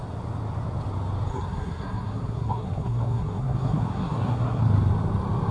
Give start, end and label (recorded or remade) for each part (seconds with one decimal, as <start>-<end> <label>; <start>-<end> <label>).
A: 0.0-1.3 recorded; 1.3-4.6 remade; 4.6-5.5 recorded

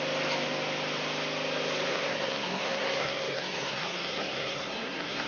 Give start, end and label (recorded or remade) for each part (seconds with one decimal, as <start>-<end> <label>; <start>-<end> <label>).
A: 0.0-1.9 recorded; 1.9-5.3 remade